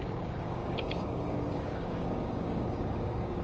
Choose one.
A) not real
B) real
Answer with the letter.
A